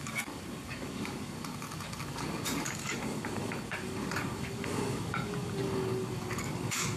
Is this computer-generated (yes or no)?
yes